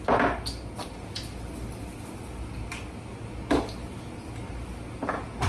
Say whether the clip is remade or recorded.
recorded